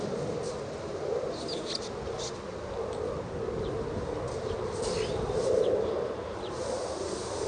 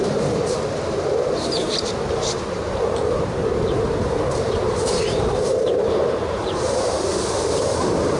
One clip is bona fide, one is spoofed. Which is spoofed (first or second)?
second